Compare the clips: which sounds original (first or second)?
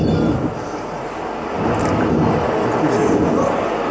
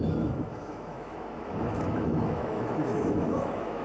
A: first